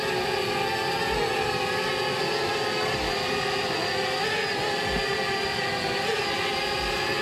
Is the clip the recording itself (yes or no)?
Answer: yes